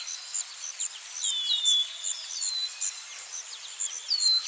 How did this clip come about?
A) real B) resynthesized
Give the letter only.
A